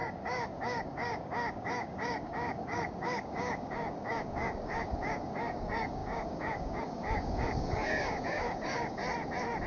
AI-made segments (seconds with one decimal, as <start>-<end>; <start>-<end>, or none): 0.0-9.0